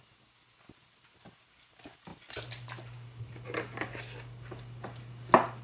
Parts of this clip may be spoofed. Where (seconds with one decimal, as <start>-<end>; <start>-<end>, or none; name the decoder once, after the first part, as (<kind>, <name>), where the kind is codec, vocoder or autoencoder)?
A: none